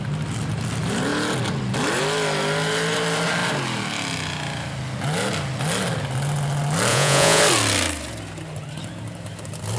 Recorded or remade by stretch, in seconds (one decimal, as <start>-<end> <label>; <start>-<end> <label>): 0.0-6.9 recorded; 6.9-7.4 remade; 7.4-9.8 recorded